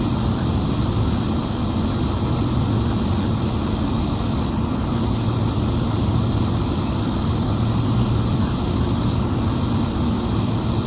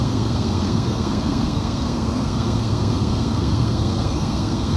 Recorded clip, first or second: first